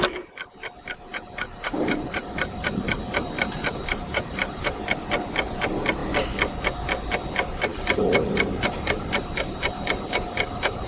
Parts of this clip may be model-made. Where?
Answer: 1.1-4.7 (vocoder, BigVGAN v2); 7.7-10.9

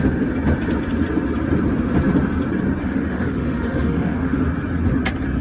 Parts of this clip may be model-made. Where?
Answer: 2.8-4.4 (autoencoder, DAC-VAE)

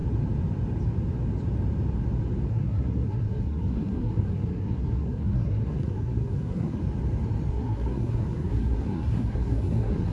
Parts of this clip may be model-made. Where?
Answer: 2.5-6.8 (codec, SNAC); 7.5-10.1

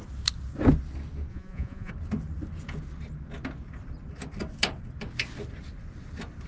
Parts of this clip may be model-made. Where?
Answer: 1.3-1.9 (vocoder, Vocos)

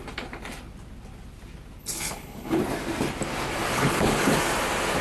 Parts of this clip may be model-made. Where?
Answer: 1.8-2.6 (codec, HILCodec); 3.7-4.3